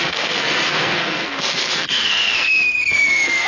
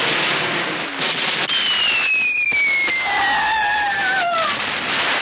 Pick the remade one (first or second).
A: first